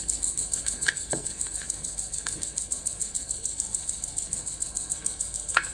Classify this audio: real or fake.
fake